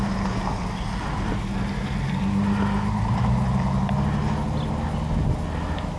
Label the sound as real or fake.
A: real